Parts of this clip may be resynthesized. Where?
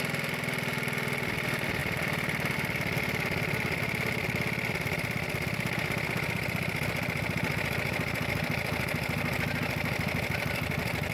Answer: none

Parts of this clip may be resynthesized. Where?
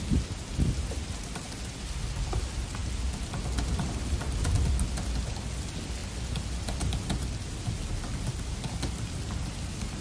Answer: none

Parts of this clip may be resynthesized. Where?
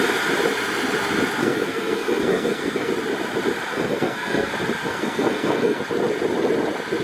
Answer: 1.4-2.9 (codec, SNAC); 3.7-4.5; 4.9-5.8